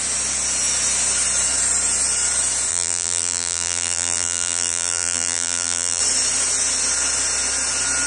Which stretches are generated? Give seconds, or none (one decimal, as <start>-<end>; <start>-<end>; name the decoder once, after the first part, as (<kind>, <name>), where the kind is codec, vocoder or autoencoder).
2.7-6.0 (vocoder, BigVGAN v2)